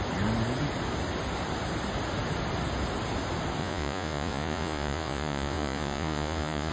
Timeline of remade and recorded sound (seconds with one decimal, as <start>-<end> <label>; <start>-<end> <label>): 0.0-3.6 recorded; 3.6-6.7 remade